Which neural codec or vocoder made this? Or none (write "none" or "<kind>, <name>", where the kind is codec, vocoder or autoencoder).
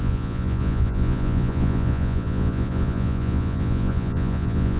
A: vocoder, Vocos